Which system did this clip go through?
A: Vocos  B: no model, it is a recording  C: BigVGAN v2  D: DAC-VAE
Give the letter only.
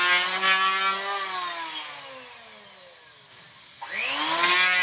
B